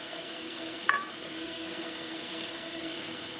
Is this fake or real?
fake